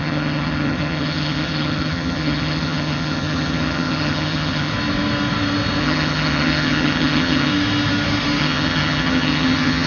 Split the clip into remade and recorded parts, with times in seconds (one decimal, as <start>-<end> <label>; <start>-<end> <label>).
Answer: 0.0-4.7 remade; 4.7-5.8 recorded; 5.8-7.5 remade; 7.5-8.4 recorded; 8.4-9.9 remade